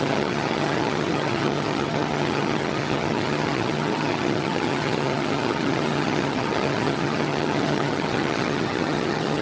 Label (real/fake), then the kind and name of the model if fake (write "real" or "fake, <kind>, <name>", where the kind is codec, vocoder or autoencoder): fake, vocoder, HiFi-GAN